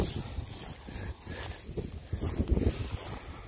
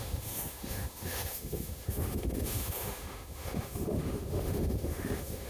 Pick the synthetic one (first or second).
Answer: second